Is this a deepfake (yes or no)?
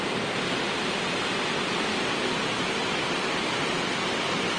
no